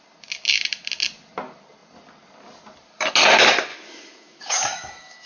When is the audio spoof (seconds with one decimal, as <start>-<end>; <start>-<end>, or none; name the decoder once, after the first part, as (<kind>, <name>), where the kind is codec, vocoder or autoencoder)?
3.7-5.3 (autoencoder, DAC-VAE)

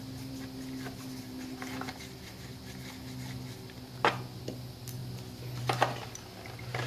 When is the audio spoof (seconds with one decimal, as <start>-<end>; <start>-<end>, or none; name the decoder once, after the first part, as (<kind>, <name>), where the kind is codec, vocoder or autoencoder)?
none

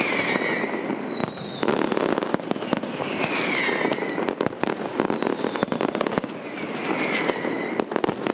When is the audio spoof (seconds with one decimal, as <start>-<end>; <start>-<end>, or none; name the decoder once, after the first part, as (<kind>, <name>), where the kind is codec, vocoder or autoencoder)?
none

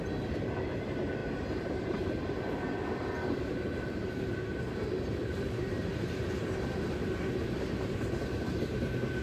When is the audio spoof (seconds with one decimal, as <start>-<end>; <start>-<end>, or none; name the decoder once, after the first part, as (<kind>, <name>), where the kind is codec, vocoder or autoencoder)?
1.2-4.3 (vocoder, BigVGAN v2); 5.2-5.9

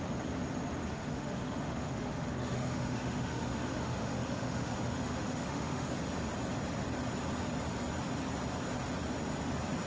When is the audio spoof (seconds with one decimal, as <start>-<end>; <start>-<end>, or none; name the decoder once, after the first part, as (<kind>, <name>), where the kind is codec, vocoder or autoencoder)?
0.8-5.9 (autoencoder, DAC-VAE)

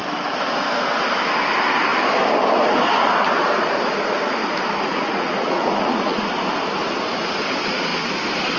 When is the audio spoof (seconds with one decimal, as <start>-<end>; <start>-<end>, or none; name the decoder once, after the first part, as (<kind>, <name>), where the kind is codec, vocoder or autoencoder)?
4.9-6.3 (vocoder, Vocos)